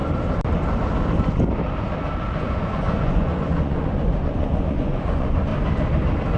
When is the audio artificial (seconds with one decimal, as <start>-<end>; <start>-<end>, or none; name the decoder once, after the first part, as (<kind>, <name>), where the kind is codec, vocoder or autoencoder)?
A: 2.4-5.5 (vocoder, Vocos)